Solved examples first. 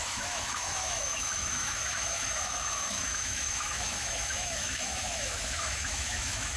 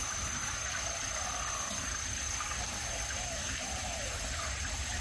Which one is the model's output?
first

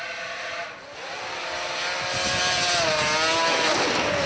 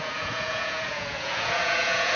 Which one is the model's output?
second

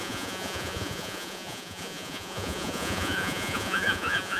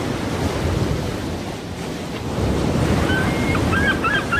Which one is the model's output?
first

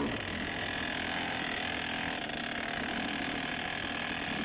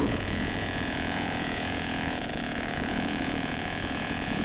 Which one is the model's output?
second